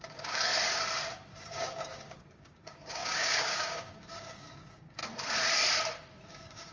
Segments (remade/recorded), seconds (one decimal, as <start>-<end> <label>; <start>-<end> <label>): 0.0-0.5 remade; 0.5-1.4 recorded; 1.4-5.0 remade; 5.0-6.3 recorded; 6.3-6.7 remade